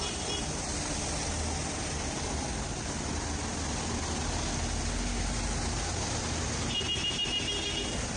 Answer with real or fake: real